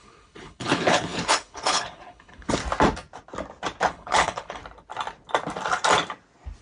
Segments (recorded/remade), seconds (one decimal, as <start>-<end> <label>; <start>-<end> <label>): 0.0-2.6 remade; 2.6-3.9 recorded; 3.9-4.6 remade; 4.6-6.6 recorded